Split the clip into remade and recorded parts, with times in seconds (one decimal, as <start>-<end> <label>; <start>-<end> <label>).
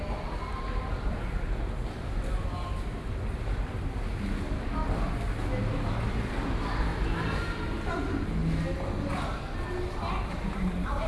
0.0-11.1 recorded